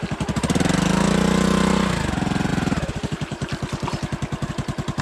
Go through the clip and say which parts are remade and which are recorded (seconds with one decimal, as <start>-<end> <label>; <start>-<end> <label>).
0.0-2.5 recorded; 2.5-4.5 remade; 4.5-5.0 recorded